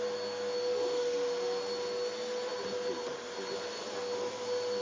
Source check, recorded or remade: recorded